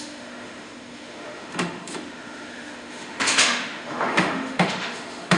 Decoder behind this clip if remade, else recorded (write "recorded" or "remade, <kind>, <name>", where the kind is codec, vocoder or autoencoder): remade, autoencoder, DAC-VAE